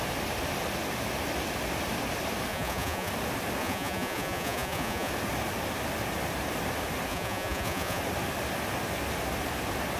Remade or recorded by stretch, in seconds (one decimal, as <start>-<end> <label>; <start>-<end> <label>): 0.0-2.5 recorded; 2.5-3.1 remade; 3.1-3.6 recorded; 3.6-5.1 remade; 5.1-7.1 recorded; 7.1-8.0 remade; 8.0-10.0 recorded